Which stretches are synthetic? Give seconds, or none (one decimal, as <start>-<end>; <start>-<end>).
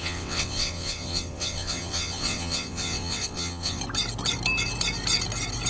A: 0.0-3.8